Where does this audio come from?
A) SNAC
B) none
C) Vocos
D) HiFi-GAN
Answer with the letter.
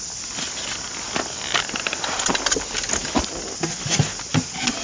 B